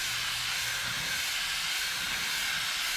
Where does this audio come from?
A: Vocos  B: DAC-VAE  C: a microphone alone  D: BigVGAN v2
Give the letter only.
C